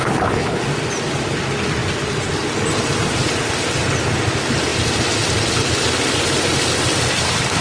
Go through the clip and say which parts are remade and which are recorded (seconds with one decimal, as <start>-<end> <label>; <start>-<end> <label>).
0.0-0.6 remade; 0.6-7.6 recorded